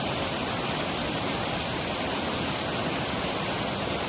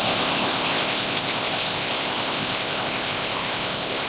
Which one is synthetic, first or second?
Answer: second